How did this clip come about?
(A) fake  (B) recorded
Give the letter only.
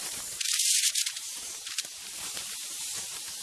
A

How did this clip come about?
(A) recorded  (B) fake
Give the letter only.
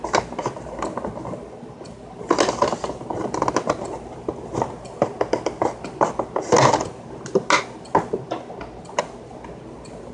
A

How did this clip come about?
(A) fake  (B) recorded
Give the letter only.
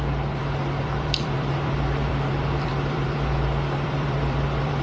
A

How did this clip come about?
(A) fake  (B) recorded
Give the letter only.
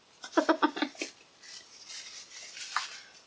B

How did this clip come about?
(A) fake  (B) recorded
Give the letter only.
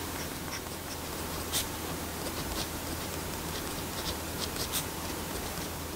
A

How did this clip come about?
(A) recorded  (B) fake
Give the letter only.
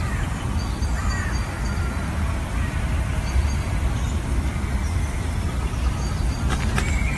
B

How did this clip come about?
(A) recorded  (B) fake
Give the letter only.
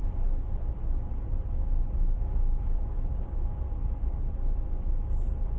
B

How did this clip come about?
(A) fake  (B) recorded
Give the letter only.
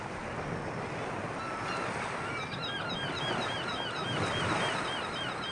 B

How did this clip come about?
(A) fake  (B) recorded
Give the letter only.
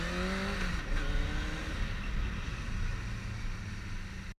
B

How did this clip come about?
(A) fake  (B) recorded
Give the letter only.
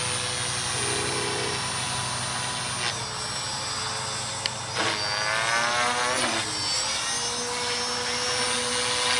B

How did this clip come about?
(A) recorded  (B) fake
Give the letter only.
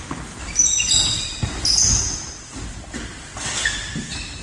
A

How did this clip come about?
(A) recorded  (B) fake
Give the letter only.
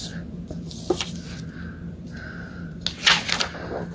A